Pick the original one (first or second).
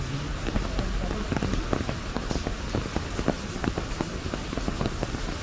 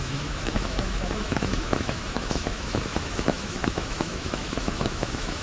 first